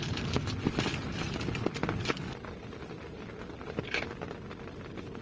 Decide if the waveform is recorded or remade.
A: recorded